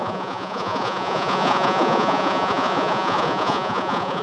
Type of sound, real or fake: fake